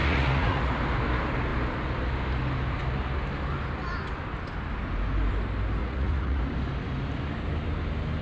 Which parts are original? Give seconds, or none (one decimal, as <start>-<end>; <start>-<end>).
0.6-5.8; 6.4-8.2